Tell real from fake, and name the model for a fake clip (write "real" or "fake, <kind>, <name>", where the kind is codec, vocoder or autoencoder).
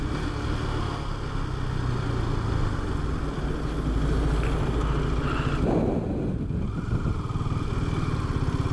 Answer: real